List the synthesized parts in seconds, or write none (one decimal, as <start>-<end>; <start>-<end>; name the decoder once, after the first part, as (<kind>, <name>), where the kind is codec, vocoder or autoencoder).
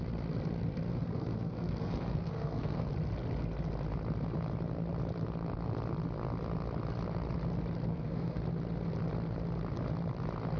0.9-2.9 (codec, SNAC); 7.9-8.4